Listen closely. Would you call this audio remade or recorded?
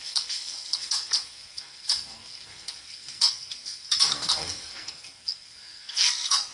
remade